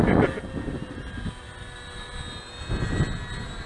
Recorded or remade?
recorded